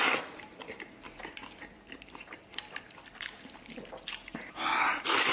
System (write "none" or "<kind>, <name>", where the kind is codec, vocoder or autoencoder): vocoder, BigVGAN v2